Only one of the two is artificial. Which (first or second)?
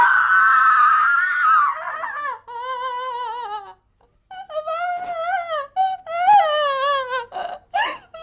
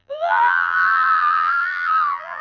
second